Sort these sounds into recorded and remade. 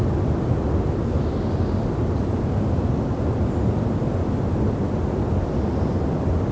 remade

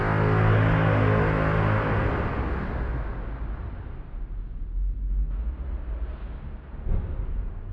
recorded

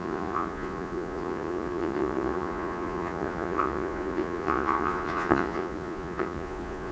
remade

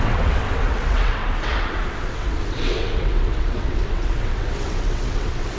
remade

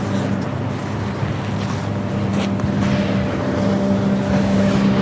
recorded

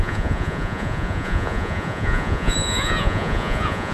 remade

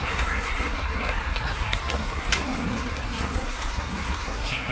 remade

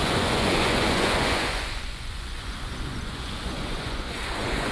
remade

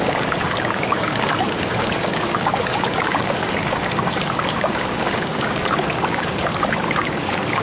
remade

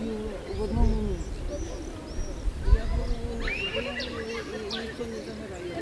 recorded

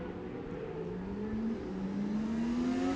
recorded